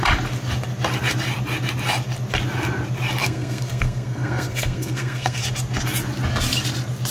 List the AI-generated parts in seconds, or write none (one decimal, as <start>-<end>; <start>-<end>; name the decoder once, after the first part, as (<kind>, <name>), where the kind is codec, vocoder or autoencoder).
3.2-5.4 (codec, SNAC)